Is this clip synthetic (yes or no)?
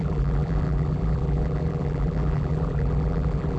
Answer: yes